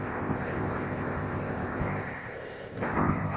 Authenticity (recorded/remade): remade